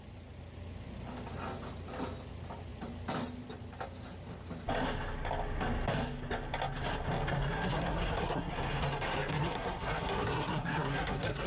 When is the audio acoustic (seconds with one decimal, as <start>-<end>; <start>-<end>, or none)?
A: 0.0-7.4; 8.5-9.3